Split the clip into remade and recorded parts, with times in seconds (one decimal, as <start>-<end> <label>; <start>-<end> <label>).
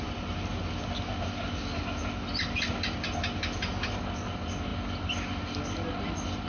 0.0-6.5 recorded